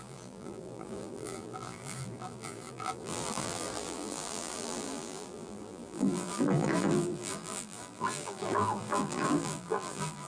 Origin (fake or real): fake